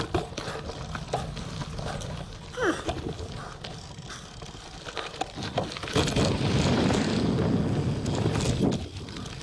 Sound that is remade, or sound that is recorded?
recorded